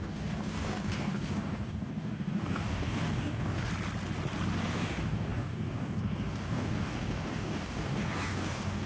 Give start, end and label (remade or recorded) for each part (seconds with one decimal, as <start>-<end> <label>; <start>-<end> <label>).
0.0-3.7 remade; 3.7-4.7 recorded; 4.7-8.9 remade